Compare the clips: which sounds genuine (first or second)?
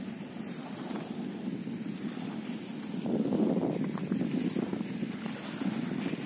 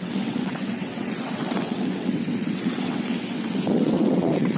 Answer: first